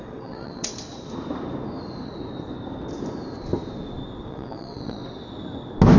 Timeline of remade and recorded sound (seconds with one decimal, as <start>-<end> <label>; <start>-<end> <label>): 0.0-0.7 remade; 0.7-4.3 recorded; 4.3-5.0 remade; 5.0-6.0 recorded

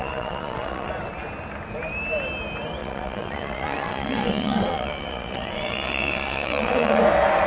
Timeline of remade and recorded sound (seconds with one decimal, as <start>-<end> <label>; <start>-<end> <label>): 0.0-0.9 remade; 0.9-2.8 recorded; 2.8-7.0 remade; 7.0-7.5 recorded

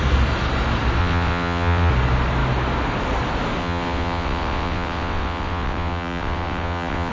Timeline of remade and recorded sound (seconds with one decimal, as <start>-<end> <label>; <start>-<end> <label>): 0.0-1.0 recorded; 1.0-1.9 remade; 1.9-3.6 recorded; 3.6-7.1 remade

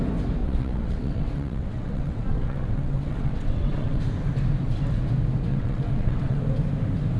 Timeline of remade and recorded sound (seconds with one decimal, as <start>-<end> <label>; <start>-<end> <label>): 0.0-0.4 recorded; 0.4-4.0 remade; 4.0-5.5 recorded; 5.5-6.4 remade; 6.4-7.2 recorded

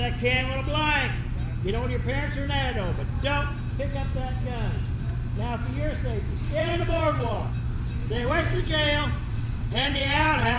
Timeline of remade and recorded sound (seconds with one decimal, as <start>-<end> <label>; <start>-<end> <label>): 0.0-6.6 recorded; 6.6-7.5 remade; 7.5-8.0 recorded; 8.0-8.7 remade; 8.7-9.3 recorded; 9.3-10.6 remade

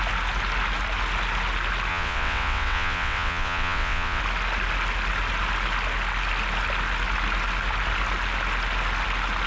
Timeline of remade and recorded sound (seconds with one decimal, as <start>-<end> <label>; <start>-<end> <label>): 0.0-1.9 recorded; 1.9-4.2 remade; 4.2-9.5 recorded

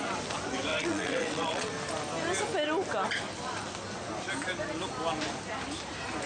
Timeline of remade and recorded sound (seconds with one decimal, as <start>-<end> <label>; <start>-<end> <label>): 0.0-0.7 recorded; 0.7-1.7 remade; 1.7-6.3 recorded

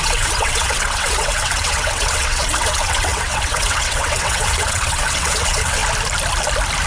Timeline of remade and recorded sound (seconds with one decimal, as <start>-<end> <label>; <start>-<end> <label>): 0.0-5.8 remade; 5.8-6.9 recorded